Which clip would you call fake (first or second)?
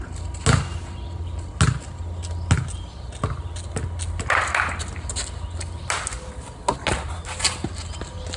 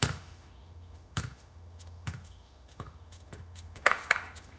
second